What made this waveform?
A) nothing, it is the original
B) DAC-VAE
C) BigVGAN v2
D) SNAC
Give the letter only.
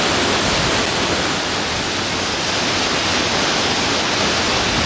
A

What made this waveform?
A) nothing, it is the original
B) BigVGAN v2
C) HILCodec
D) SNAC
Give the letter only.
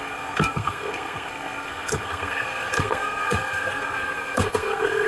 D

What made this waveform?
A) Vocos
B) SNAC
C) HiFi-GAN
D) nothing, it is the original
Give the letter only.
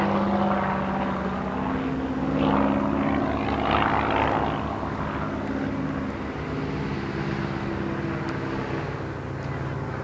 D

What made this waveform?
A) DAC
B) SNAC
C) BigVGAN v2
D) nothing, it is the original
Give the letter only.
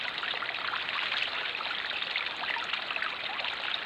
D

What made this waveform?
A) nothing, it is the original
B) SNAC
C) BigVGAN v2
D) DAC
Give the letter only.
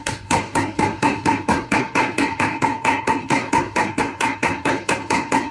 B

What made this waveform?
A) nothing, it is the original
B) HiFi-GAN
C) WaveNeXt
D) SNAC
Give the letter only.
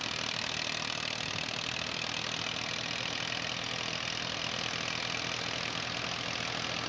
A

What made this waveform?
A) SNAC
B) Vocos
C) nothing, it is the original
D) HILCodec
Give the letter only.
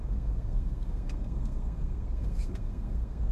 A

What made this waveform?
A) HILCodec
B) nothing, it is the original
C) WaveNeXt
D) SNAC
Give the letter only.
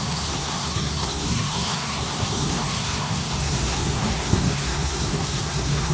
D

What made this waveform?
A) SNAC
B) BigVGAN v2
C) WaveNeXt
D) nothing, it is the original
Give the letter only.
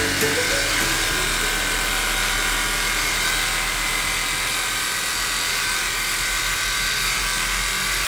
D